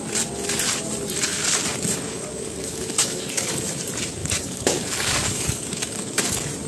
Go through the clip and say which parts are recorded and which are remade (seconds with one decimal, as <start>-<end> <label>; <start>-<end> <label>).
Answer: 0.0-2.1 recorded; 2.1-3.7 remade; 3.7-4.2 recorded; 4.2-6.2 remade; 6.2-6.7 recorded